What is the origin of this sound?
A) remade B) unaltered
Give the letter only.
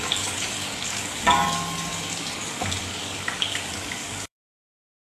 A